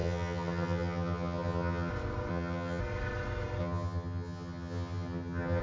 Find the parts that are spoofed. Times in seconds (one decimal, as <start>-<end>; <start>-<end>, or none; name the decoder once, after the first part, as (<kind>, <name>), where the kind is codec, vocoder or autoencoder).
0.0-1.9 (vocoder, HiFi-GAN); 2.3-2.8; 3.6-5.6